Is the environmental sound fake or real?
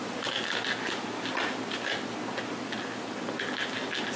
real